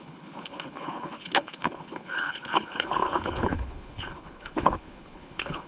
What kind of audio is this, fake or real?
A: fake